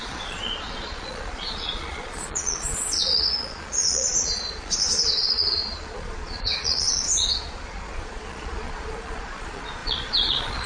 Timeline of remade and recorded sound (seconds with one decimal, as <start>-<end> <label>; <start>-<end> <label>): 0.0-10.7 remade